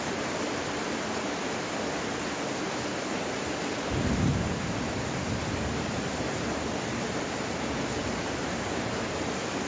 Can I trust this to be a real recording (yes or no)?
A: no